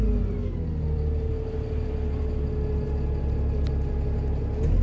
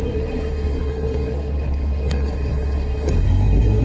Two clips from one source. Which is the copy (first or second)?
second